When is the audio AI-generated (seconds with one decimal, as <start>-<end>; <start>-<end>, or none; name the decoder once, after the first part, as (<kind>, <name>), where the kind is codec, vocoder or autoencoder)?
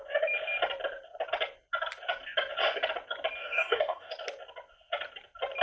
3.4-4.1 (codec, DAC)